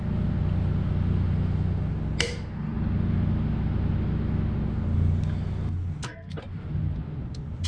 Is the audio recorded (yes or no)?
yes